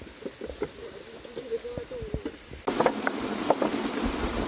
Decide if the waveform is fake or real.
real